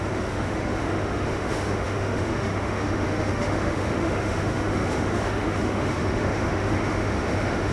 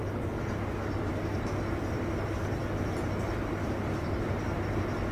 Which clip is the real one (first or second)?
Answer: second